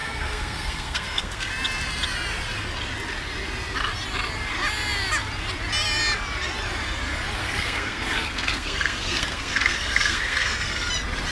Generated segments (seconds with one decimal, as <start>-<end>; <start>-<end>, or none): 0.0-1.5; 7.4-10.9